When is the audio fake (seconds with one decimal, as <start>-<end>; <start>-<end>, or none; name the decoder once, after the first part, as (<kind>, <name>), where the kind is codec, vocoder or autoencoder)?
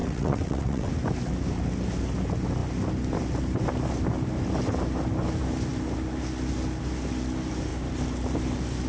0.0-0.9 (vocoder, WaveNeXt)